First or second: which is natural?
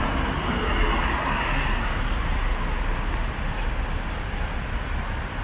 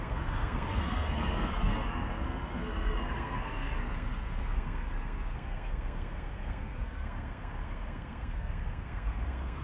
first